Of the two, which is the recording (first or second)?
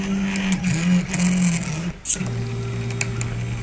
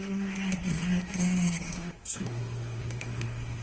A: first